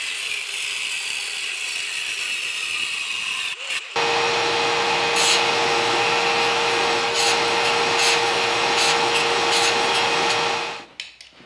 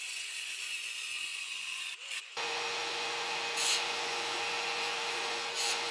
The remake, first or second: second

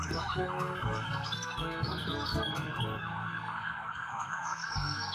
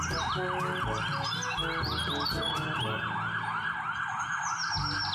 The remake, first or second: first